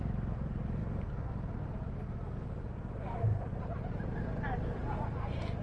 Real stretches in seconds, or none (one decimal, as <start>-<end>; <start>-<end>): 0.8-4.2